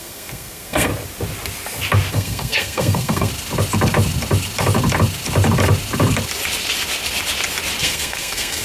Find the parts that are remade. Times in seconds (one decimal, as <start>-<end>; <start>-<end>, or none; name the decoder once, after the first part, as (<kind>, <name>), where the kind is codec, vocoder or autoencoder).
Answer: 0.0-0.9 (codec, SNAC); 2.1-3.3; 7.8-8.6